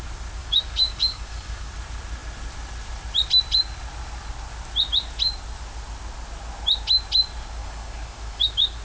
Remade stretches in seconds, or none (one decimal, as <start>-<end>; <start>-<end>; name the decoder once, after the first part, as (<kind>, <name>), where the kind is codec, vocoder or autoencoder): 0.4-1.7 (codec, DAC); 7.6-8.8